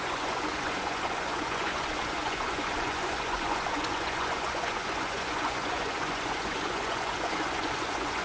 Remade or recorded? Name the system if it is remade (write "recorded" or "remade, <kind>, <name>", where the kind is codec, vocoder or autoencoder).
remade, vocoder, Vocos